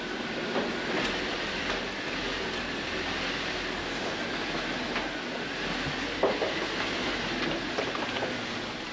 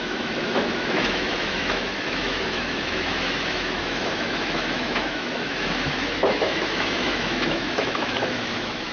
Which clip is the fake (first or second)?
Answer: second